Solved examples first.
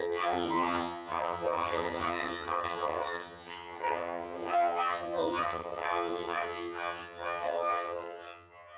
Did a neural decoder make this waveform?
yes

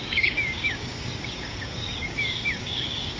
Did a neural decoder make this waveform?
yes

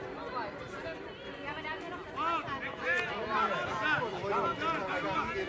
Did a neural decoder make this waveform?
no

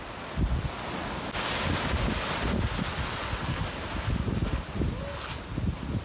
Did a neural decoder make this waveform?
no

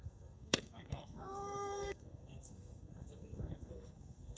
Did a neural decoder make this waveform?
yes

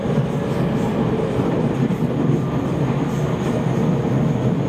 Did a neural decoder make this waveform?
no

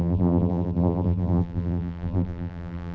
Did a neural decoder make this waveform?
yes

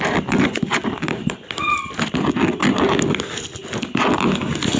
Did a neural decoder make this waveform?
no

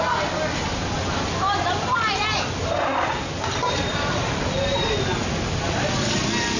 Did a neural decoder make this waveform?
no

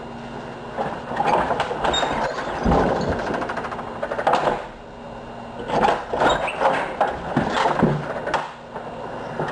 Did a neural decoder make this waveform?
no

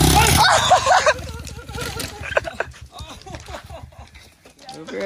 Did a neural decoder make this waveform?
no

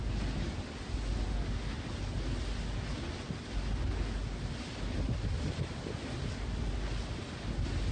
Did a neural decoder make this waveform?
no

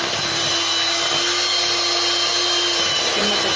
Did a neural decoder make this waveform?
no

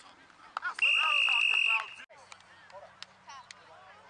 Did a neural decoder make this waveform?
no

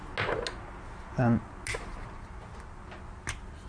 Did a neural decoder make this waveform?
no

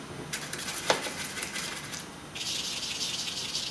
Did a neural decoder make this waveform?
no